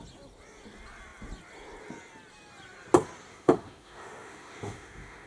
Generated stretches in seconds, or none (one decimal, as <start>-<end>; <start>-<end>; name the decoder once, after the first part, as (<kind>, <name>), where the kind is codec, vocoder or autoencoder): 3.3-5.3 (autoencoder, DAC-VAE)